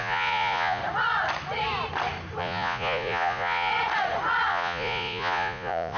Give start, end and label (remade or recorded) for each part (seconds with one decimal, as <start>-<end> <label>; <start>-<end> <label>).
0.0-0.8 remade; 0.8-2.4 recorded; 2.4-3.7 remade; 3.7-4.5 recorded; 4.5-6.0 remade